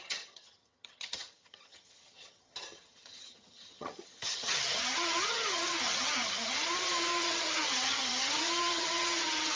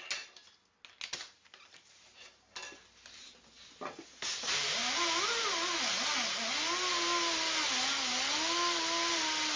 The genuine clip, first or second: second